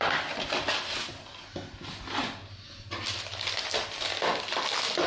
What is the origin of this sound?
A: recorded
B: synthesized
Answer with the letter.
A